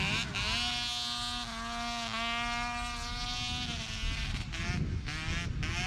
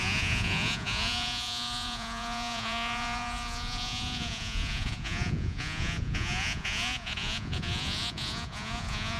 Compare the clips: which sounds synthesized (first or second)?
second